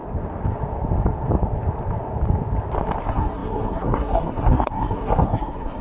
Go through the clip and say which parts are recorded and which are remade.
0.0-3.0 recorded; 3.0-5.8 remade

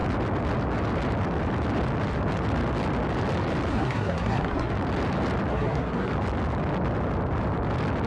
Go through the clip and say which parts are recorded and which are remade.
0.0-3.7 recorded; 3.7-4.7 remade; 4.7-5.5 recorded; 5.5-6.1 remade; 6.1-8.1 recorded

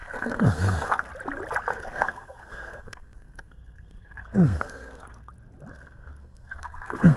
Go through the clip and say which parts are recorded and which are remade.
0.0-1.1 remade; 1.1-1.7 recorded; 1.7-5.3 remade; 5.3-5.7 recorded; 5.7-7.2 remade

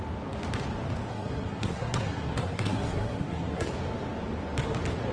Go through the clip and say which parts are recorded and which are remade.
0.0-1.1 recorded; 1.1-3.7 remade; 3.7-5.1 recorded

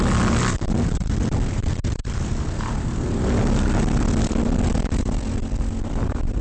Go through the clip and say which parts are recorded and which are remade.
0.0-6.4 recorded

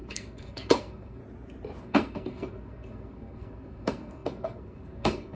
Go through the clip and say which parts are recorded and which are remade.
0.0-1.2 remade; 1.2-1.8 recorded; 1.8-5.3 remade